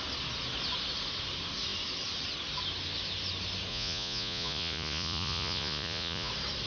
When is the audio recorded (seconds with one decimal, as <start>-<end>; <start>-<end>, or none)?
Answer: 0.0-3.7; 6.3-6.7